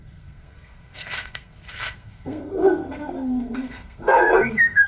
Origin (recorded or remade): remade